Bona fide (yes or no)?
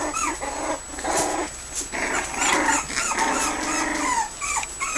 yes